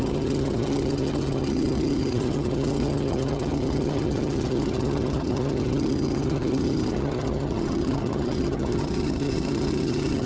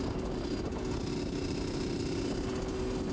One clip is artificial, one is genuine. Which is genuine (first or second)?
second